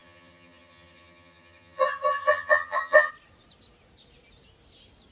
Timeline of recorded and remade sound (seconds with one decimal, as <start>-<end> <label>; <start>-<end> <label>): 0.0-3.1 remade; 3.1-5.1 recorded